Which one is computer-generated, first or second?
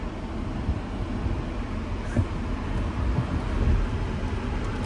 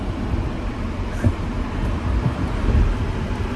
second